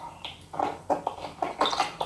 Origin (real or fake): fake